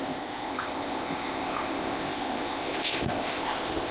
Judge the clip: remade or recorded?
remade